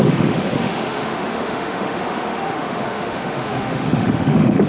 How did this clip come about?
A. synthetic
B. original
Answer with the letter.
A